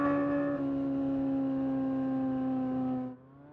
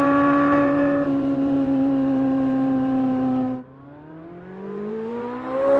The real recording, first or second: first